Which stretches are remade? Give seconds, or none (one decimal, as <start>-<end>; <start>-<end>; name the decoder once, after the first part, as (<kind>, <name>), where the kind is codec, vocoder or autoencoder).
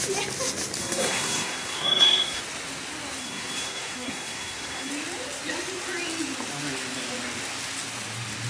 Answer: 0.8-2.4 (codec, SNAC); 3.2-4.9